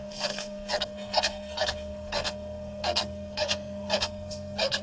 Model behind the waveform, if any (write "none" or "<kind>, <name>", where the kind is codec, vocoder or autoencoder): codec, SNAC